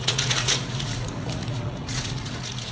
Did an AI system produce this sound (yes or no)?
yes